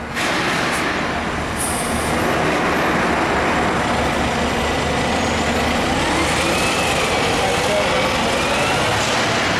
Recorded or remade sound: recorded